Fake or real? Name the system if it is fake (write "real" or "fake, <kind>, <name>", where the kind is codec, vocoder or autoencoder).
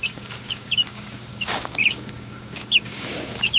fake, codec, DAC